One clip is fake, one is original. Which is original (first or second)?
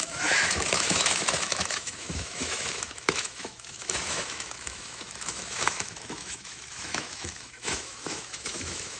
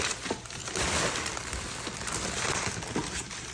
second